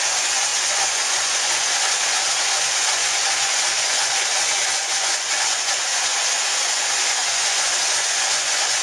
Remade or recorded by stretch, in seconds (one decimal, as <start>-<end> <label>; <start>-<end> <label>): 0.0-8.8 remade